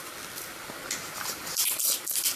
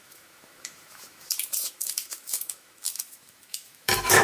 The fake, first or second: second